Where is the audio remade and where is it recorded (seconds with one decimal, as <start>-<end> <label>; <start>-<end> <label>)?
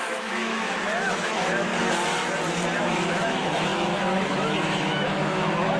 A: 0.0-1.7 remade; 1.7-2.8 recorded; 2.8-5.8 remade